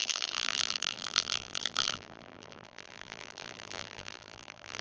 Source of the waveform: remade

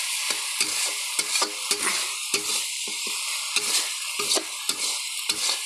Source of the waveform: remade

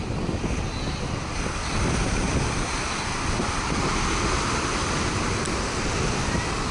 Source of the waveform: recorded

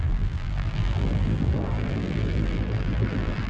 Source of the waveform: remade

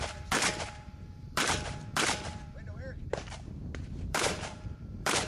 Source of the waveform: remade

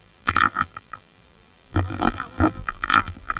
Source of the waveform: remade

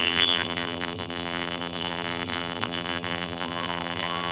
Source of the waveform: remade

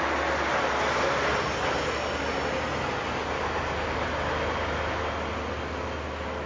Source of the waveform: recorded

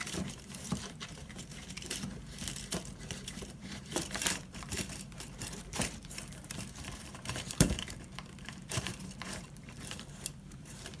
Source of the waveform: remade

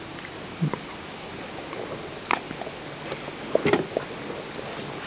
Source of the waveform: recorded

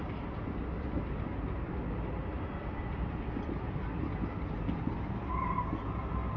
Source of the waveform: recorded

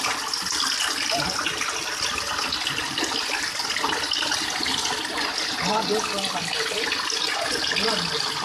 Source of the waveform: recorded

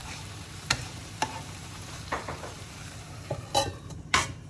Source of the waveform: remade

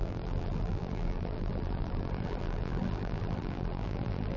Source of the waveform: remade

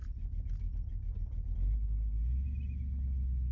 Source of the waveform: recorded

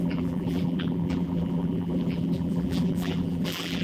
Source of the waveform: remade